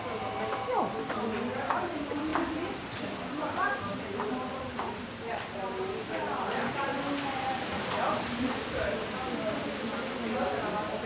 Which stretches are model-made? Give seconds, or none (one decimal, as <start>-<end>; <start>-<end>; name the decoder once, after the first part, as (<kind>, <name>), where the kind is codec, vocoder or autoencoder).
none